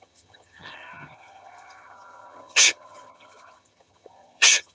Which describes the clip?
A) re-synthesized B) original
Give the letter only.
A